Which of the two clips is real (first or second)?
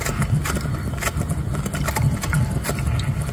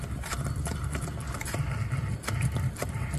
first